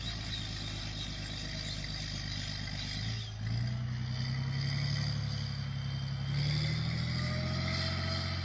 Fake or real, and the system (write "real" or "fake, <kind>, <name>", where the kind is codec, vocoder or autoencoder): real